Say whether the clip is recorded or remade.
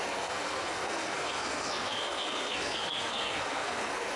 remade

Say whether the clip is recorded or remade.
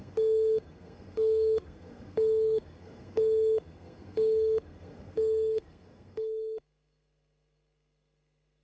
remade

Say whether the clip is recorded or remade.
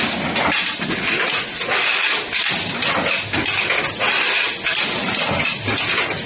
recorded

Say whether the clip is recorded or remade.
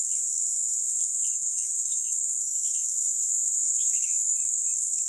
remade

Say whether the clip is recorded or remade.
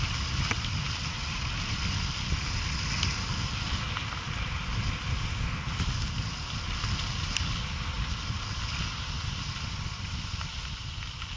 recorded